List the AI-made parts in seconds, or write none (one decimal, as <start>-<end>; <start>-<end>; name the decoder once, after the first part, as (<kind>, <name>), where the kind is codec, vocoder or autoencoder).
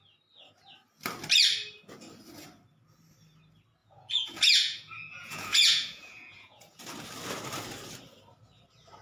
3.8-6.8 (vocoder, Vocos)